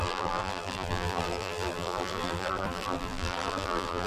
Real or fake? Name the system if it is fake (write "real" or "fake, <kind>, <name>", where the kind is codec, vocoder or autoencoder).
fake, vocoder, BigVGAN v2